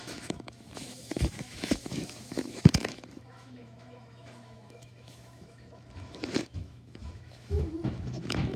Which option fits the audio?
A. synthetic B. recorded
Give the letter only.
A